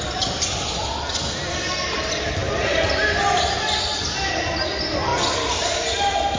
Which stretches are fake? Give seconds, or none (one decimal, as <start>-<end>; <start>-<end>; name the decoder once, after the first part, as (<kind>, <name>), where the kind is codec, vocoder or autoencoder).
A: none

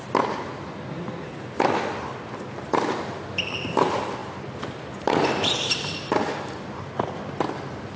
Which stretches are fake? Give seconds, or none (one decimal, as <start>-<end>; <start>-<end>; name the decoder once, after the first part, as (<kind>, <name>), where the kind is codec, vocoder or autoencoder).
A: none

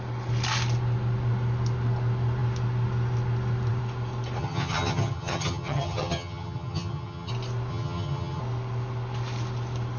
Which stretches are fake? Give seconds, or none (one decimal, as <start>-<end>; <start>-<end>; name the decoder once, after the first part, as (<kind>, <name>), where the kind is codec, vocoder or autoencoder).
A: 4.4-7.3 (vocoder, HiFi-GAN); 7.7-8.4

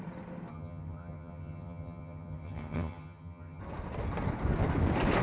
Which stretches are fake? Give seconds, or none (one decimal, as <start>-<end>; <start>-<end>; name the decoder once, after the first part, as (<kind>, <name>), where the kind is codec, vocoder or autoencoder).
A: 0.5-3.6 (vocoder, HiFi-GAN)